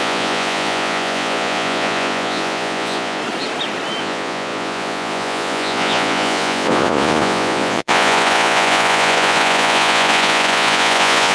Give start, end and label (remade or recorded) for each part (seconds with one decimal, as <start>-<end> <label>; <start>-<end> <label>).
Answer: 0.0-3.2 remade; 3.2-4.0 recorded; 4.0-11.3 remade